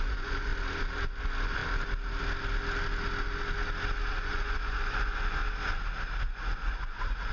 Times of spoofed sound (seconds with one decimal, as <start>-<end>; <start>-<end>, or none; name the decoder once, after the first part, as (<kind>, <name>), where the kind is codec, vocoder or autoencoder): 0.0-0.5 (vocoder, Vocos); 1.2-1.6; 4.1-5.4; 6.2-7.3